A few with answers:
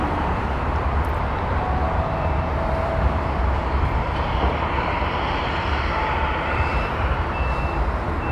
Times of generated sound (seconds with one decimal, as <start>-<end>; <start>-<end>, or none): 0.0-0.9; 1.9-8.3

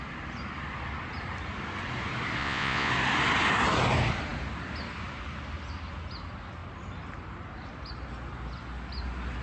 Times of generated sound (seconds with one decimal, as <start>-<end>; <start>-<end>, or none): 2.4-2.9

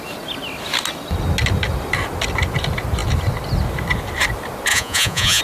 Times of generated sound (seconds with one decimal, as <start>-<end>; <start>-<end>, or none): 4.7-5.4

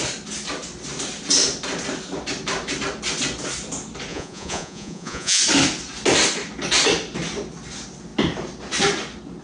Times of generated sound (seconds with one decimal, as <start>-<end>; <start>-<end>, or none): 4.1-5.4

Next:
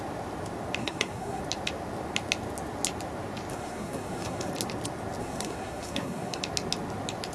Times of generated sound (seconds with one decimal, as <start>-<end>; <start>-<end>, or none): 0.8-1.4; 3.5-4.5; 5.2-6.4